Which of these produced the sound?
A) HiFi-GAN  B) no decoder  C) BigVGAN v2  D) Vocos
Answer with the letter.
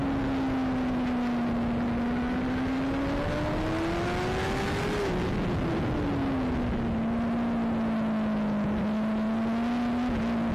B